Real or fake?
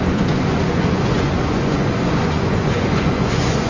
fake